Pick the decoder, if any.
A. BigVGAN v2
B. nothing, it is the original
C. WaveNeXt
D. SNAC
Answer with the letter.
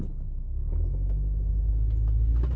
B